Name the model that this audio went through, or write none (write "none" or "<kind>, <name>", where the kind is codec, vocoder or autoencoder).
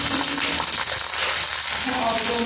none